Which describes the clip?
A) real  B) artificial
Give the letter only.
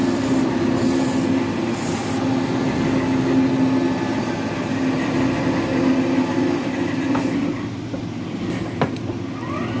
A